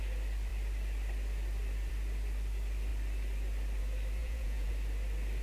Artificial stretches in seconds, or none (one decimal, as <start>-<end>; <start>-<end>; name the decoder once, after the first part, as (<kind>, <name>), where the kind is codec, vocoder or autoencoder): 4.2-4.7 (vocoder, Vocos)